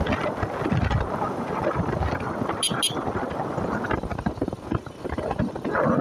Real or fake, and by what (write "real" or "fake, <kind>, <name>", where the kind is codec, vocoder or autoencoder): real